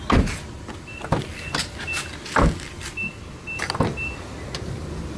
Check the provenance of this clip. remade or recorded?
recorded